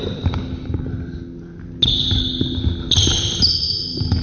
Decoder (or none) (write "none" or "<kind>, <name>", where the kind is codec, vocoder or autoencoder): none